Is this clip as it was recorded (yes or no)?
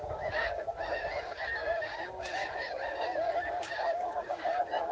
no